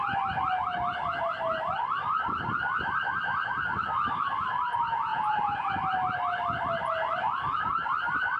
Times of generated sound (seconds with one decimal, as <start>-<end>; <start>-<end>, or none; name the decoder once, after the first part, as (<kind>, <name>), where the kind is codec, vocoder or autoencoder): 5.1-5.7 (vocoder, Vocos)